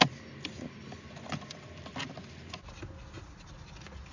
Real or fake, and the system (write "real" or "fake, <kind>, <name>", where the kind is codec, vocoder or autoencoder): real